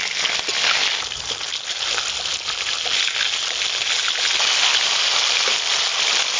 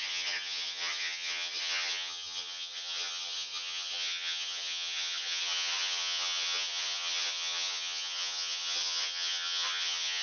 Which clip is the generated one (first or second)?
second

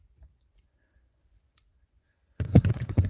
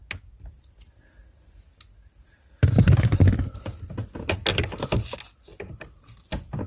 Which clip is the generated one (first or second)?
first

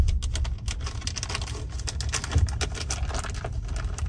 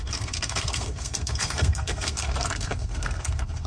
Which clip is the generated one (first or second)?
second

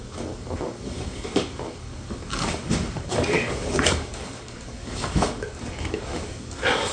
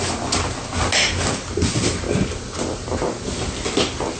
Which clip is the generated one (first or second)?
first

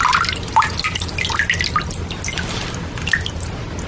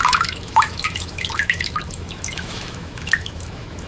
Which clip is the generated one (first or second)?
second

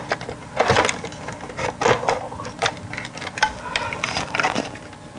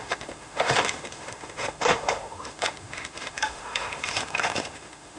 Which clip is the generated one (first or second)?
second